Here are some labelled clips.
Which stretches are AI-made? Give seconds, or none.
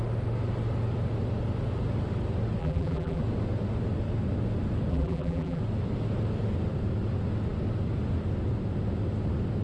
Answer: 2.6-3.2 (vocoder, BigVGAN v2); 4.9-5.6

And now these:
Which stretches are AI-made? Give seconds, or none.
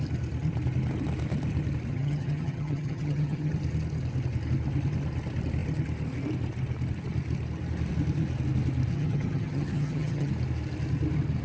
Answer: 1.9-3.5 (vocoder, HiFi-GAN); 8.9-10.3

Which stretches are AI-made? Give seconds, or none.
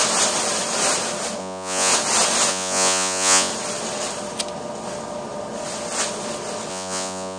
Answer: 1.4-1.9 (vocoder, Vocos); 2.5-3.5; 6.7-7.4